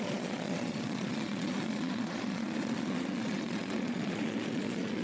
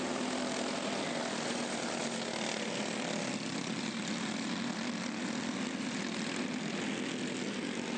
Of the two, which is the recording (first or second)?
second